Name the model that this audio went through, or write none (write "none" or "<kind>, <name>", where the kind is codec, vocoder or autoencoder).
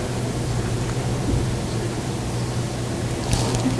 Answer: none